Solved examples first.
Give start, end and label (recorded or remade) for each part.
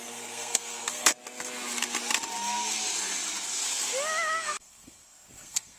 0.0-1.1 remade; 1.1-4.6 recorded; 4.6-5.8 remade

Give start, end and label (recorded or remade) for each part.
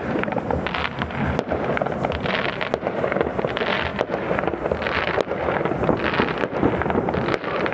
0.0-7.7 recorded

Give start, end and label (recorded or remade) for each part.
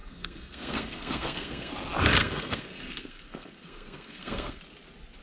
0.0-1.7 remade; 1.7-2.2 recorded; 2.2-4.6 remade; 4.6-5.2 recorded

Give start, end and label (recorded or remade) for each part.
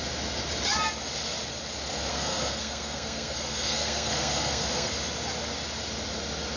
0.0-2.1 recorded; 2.1-4.9 remade; 4.9-6.6 recorded